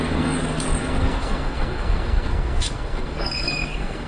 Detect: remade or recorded remade